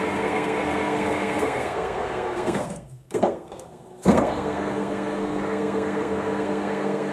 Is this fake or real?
fake